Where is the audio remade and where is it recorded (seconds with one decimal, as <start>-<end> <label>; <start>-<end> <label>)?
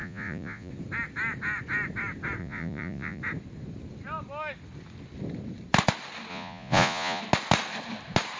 0.0-0.7 remade; 0.7-2.4 recorded; 2.4-3.2 remade; 3.2-6.3 recorded; 6.3-7.2 remade; 7.2-8.4 recorded